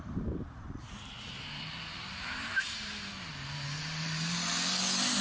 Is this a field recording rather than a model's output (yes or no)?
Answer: no